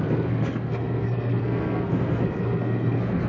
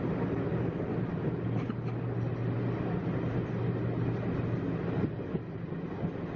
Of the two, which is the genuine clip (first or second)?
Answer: second